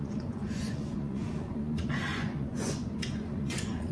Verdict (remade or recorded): remade